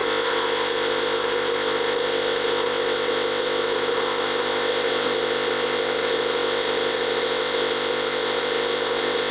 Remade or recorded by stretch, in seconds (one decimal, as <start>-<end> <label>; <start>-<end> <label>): 0.0-9.3 remade